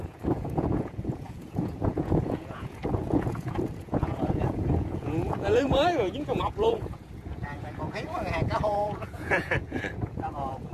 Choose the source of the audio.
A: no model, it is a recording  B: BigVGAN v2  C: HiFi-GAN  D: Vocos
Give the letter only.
D